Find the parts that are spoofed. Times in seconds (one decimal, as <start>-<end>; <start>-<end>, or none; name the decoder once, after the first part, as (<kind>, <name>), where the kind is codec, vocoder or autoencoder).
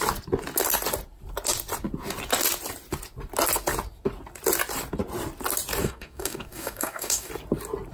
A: 5.8-7.3 (codec, DAC)